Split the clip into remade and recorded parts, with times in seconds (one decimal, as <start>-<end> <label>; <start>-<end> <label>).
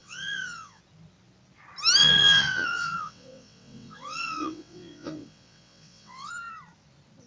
0.0-0.8 remade; 0.8-2.0 recorded; 2.0-6.3 remade; 6.3-7.3 recorded